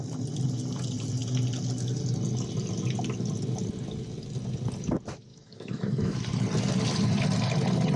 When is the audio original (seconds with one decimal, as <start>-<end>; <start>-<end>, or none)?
0.0-5.3; 6.2-8.0